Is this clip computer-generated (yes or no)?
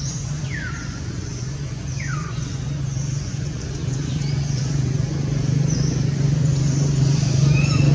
yes